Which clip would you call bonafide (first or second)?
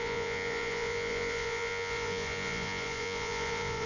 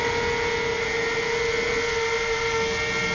second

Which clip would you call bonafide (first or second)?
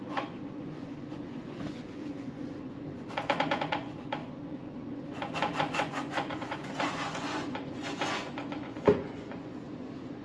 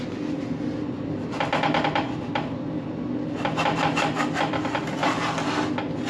second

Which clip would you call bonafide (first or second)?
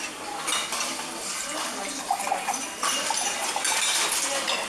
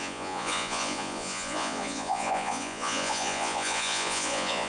first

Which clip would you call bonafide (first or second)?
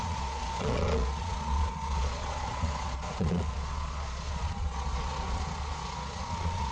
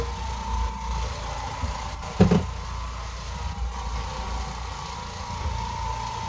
second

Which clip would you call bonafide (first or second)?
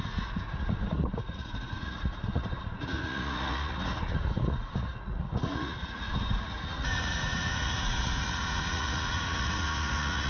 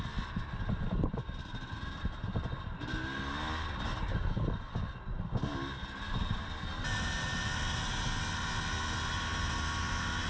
second